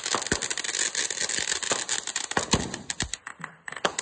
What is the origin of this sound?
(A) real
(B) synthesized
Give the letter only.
A